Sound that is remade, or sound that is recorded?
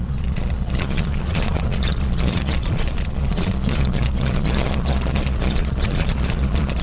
remade